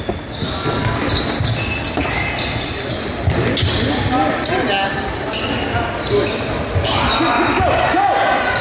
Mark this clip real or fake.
real